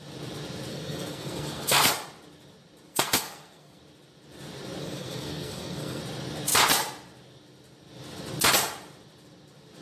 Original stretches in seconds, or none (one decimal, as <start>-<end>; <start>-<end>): 0.0-0.7; 1.9-2.9; 3.8-4.8; 6.0-9.8